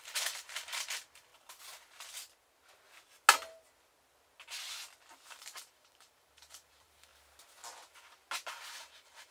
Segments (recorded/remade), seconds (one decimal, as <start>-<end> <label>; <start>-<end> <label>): 0.0-1.3 remade; 1.3-5.3 recorded; 5.3-7.1 remade; 7.1-8.5 recorded; 8.5-9.3 remade